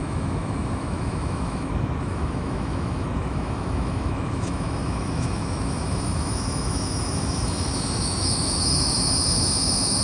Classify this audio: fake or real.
fake